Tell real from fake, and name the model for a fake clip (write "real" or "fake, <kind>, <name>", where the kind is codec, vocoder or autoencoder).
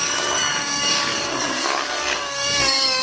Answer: fake, codec, DAC